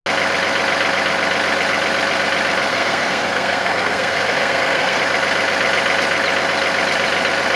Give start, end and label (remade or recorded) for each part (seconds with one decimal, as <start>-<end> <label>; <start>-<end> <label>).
0.0-2.7 recorded; 2.7-5.0 remade; 5.0-7.6 recorded